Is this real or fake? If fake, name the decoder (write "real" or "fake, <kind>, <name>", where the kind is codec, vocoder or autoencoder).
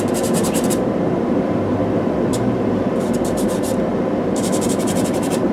fake, vocoder, BigVGAN v2